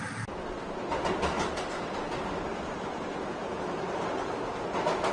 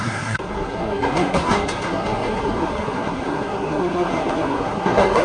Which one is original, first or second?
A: first